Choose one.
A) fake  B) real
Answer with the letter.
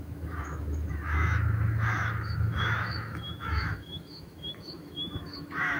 A